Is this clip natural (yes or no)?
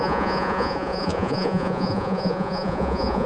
no